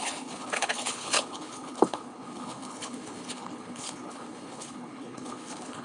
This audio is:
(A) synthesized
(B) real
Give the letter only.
A